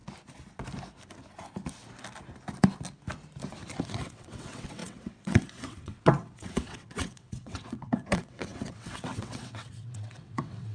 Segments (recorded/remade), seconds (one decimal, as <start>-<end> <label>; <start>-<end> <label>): 0.0-3.8 recorded; 3.8-10.7 remade